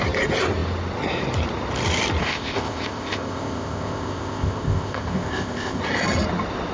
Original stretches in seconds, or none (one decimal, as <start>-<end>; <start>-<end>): 0.0-2.2; 5.8-6.7